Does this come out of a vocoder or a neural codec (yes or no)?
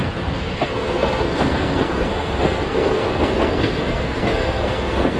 yes